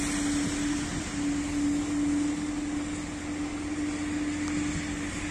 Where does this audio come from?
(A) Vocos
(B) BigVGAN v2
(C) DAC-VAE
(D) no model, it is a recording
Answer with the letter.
D